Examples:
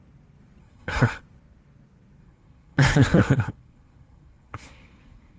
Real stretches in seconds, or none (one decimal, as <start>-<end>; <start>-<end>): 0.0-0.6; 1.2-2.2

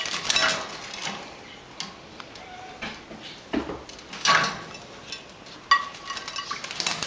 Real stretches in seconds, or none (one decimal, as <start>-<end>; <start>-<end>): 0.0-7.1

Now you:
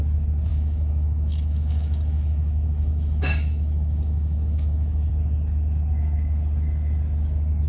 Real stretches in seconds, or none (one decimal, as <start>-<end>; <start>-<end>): 0.0-0.5; 5.1-7.7

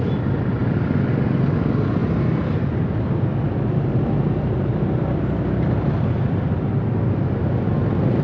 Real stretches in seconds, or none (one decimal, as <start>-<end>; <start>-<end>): 0.0-8.2

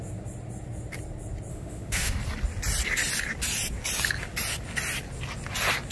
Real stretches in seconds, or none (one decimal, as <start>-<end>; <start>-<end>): 0.0-1.5; 2.2-5.9